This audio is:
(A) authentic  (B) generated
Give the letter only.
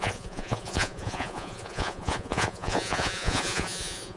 B